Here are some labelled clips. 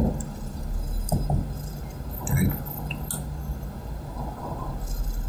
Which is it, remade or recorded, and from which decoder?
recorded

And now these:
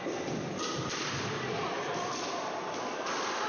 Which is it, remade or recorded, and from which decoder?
remade, vocoder, BigVGAN v2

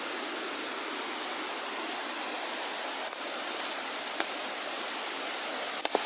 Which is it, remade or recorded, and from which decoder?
recorded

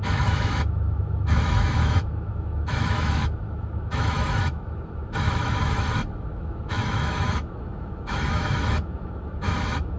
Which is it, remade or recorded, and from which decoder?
remade, autoencoder, DAC-VAE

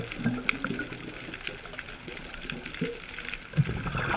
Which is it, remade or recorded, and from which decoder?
recorded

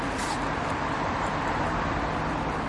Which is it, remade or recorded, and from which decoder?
recorded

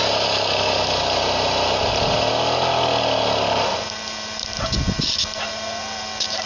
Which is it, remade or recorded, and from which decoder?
recorded